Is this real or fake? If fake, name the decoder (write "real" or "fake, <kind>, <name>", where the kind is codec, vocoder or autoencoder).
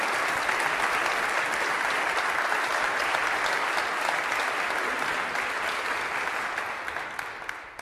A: real